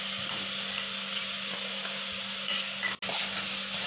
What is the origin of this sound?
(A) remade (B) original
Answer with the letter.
B